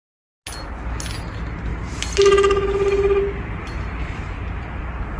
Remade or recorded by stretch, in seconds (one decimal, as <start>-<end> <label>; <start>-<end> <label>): 0.0-5.2 recorded